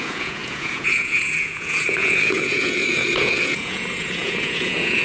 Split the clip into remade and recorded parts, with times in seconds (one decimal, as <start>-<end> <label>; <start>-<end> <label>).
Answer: 0.0-5.0 remade